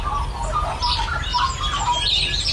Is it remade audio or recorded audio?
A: recorded